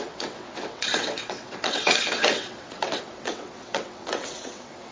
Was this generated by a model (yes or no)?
yes